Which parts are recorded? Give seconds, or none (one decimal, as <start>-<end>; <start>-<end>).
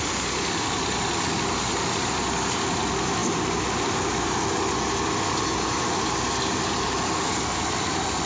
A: 0.0-8.2